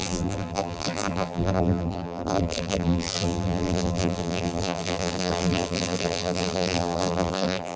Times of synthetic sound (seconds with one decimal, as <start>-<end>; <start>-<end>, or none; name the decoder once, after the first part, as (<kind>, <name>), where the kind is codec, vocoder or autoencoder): 0.0-7.8 (vocoder, BigVGAN v2)